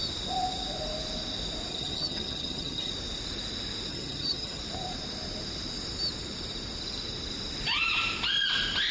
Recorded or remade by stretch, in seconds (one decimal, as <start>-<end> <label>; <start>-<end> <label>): 0.0-1.7 recorded; 1.7-2.9 remade; 2.9-3.9 recorded; 3.9-4.6 remade; 4.6-8.9 recorded

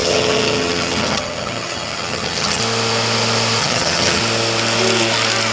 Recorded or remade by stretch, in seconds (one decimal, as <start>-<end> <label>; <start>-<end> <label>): 0.0-2.6 remade; 2.6-3.6 recorded; 3.6-4.2 remade; 4.2-5.5 recorded